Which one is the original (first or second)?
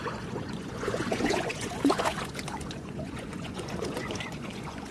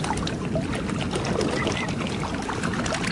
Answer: second